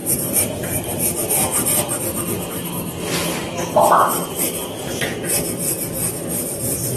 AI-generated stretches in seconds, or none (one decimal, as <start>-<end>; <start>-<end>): 0.0-1.0